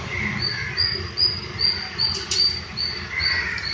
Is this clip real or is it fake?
real